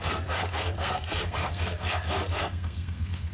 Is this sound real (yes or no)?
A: no